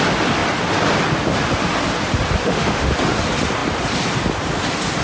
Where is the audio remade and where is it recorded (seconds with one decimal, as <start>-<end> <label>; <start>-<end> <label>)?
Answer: 0.0-2.4 recorded; 2.4-2.9 remade; 2.9-5.0 recorded